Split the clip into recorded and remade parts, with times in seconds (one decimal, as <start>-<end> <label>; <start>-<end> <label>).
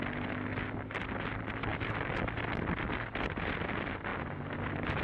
0.0-5.0 recorded